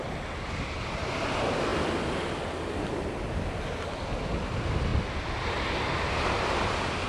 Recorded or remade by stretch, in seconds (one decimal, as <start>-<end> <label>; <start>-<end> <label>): 0.0-7.1 recorded